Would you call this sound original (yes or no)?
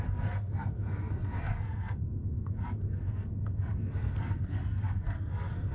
no